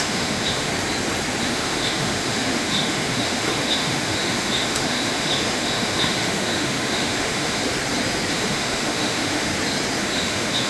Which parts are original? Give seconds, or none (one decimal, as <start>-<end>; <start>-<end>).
0.7-1.4; 7.6-8.3; 9.5-10.0